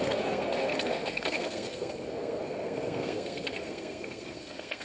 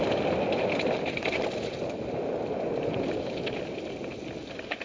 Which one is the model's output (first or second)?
first